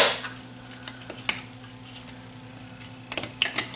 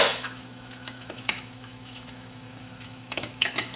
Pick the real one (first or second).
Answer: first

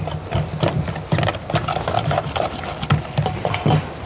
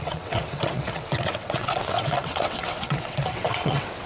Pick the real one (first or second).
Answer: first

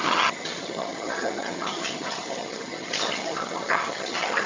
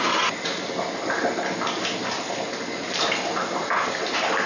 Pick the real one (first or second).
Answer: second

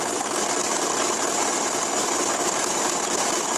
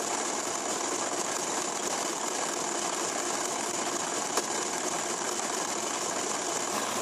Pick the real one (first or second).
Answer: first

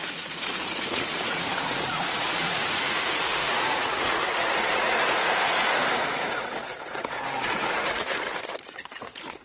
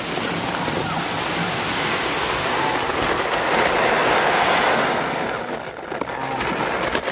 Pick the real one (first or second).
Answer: second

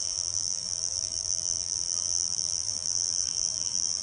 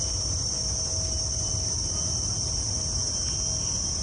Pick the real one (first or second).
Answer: second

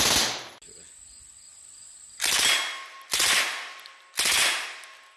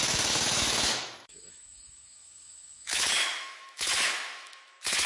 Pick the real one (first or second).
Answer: first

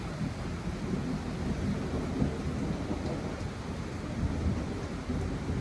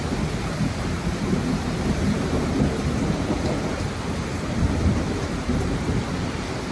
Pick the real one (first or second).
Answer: first